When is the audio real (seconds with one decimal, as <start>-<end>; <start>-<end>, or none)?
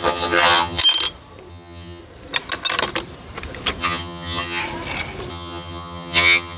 0.8-1.5; 2.0-3.8; 4.6-5.3